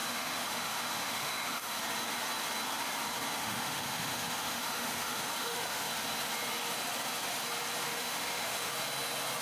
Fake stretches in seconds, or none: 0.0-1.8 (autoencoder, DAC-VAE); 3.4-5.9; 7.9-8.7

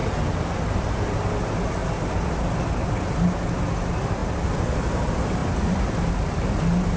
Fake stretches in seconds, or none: none

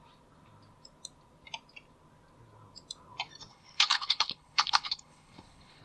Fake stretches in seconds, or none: 3.5-5.8 (codec, HILCodec)

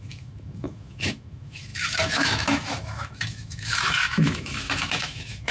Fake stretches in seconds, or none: 0.0-5.5 (autoencoder, DAC-VAE)

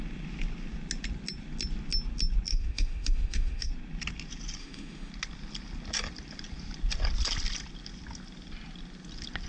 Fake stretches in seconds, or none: 2.5-3.7 (autoencoder, DAC-VAE); 4.6-5.1

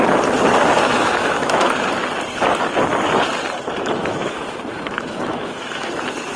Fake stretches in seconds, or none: 0.9-1.7 (autoencoder, DAC-VAE); 4.0-5.9

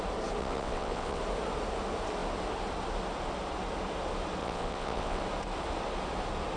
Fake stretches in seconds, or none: 0.4-1.2 (vocoder, WaveNeXt); 4.4-5.2